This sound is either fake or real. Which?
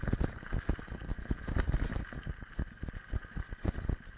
real